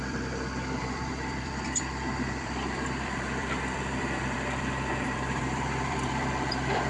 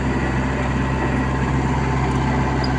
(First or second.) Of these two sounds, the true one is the second